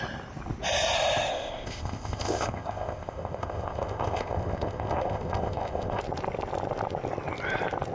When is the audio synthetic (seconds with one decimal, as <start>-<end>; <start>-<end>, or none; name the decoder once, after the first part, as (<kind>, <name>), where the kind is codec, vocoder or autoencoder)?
1.3-6.0 (codec, ZipCodec)